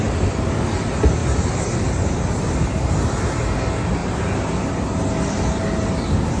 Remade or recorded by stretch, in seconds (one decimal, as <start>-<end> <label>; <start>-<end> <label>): 0.0-6.4 recorded